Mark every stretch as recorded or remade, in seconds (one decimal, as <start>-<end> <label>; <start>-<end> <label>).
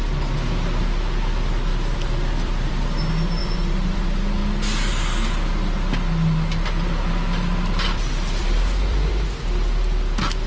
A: 0.0-1.7 recorded; 1.7-2.7 remade; 2.7-3.4 recorded; 3.4-4.0 remade; 4.0-8.4 recorded; 8.4-9.1 remade; 9.1-10.5 recorded